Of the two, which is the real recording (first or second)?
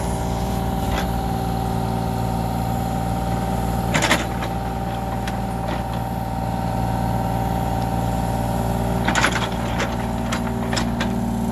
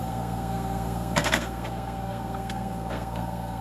first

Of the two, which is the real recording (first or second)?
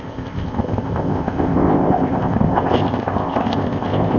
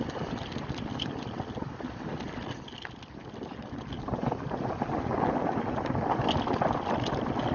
second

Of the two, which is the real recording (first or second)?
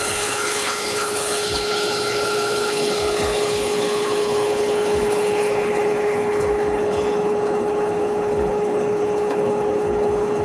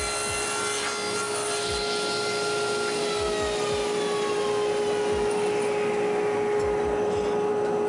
second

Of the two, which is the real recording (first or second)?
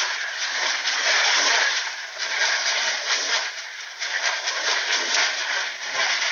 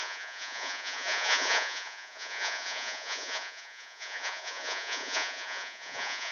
first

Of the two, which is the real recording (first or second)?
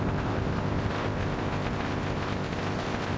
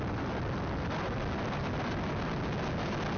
second